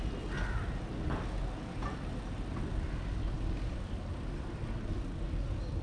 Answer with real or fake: real